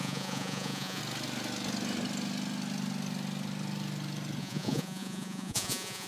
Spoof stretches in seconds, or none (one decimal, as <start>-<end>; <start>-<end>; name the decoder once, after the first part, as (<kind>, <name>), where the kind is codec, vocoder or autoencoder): 0.0-1.0 (vocoder, Vocos); 4.4-6.1